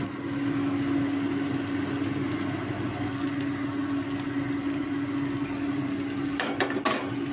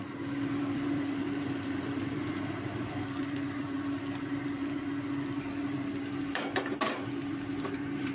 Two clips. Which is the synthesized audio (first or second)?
second